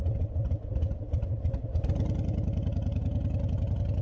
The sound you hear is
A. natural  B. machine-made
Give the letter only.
A